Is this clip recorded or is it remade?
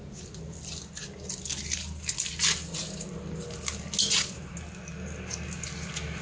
recorded